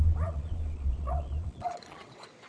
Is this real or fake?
fake